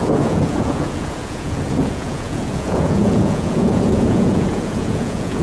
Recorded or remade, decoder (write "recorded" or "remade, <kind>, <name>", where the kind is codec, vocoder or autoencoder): remade, vocoder, Vocos